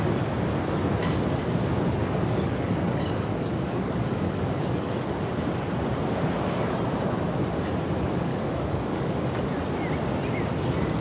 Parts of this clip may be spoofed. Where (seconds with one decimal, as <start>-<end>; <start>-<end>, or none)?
2.0-5.2; 8.3-9.1